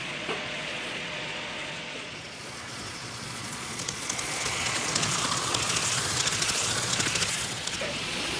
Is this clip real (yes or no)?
no